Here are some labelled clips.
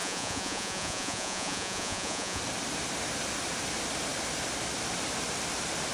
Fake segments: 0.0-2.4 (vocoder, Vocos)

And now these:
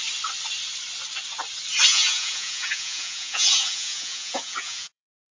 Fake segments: 1.9-5.3 (vocoder, Vocos)

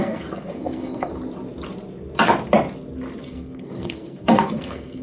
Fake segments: 0.0-1.1 (codec, SNAC); 3.2-5.0

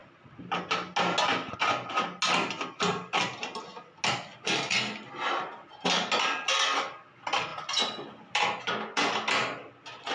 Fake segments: none